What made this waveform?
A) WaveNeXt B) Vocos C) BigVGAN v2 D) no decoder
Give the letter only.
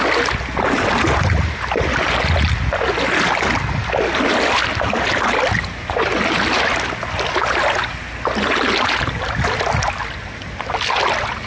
D